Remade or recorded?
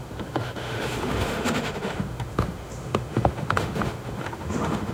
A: remade